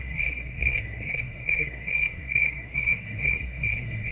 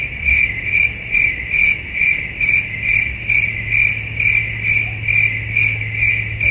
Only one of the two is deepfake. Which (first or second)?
first